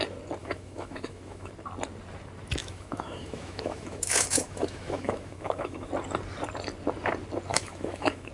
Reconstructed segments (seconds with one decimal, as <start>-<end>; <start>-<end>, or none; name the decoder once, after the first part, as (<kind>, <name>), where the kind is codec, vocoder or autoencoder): 0.4-1.5 (autoencoder, DAC-VAE); 2.6-5.9; 7.5-8.3